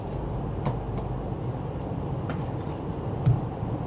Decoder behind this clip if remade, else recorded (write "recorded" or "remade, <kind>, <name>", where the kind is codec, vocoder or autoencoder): recorded